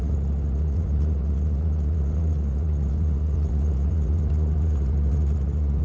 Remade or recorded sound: remade